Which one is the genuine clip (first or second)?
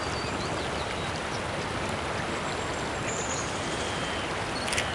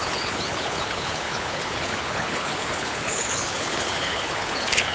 first